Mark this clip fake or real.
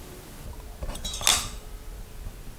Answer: real